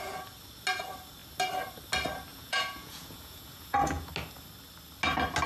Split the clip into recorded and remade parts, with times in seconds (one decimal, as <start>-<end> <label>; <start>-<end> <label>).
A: 0.0-2.3 recorded; 2.3-4.1 remade; 4.1-5.5 recorded